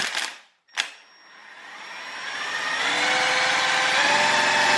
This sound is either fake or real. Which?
real